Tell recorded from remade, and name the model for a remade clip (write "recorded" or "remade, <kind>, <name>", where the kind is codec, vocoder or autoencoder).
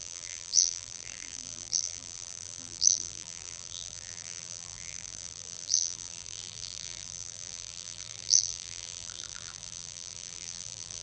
remade, vocoder, BigVGAN v2